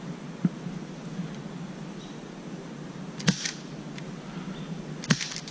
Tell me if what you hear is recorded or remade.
recorded